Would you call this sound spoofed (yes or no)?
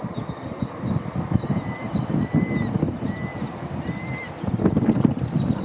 no